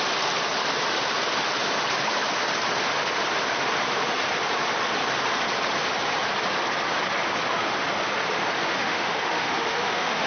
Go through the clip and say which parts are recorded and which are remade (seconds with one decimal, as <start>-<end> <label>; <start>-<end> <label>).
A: 0.0-8.6 recorded; 8.6-10.3 remade